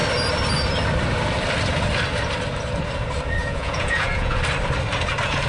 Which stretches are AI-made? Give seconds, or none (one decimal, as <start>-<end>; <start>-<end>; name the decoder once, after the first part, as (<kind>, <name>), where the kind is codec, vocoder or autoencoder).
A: 3.4-4.4 (vocoder, Vocos)